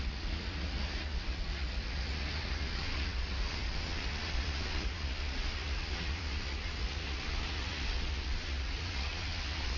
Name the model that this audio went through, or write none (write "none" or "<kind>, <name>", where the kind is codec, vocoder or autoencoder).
vocoder, Vocos